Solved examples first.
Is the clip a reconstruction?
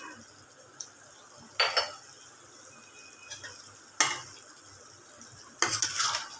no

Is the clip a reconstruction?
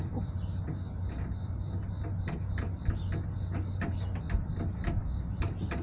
no